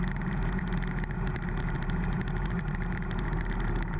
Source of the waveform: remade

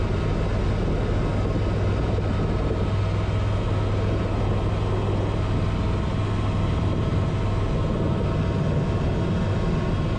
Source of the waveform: recorded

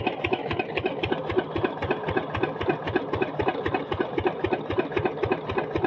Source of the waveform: recorded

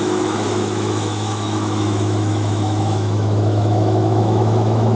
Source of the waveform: remade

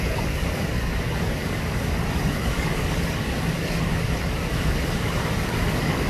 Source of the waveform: remade